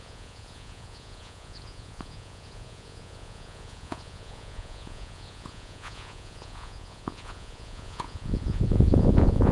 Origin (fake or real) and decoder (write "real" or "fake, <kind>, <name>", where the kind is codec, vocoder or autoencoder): fake, vocoder, Vocos